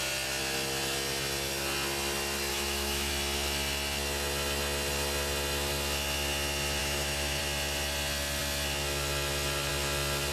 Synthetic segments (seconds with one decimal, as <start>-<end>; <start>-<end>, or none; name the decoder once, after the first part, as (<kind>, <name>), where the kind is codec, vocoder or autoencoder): 2.5-3.1 (autoencoder, DAC-VAE); 6.8-7.4